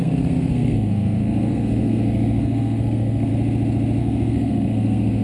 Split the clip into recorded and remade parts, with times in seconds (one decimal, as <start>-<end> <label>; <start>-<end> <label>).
0.0-3.3 remade; 3.3-4.0 recorded; 4.0-5.2 remade